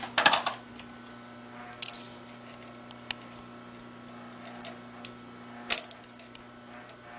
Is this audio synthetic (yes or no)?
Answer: no